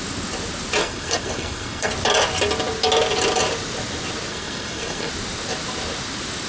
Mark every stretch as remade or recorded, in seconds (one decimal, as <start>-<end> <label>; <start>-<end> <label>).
0.0-0.8 recorded; 0.8-1.9 remade; 1.9-4.3 recorded; 4.3-5.1 remade; 5.1-6.5 recorded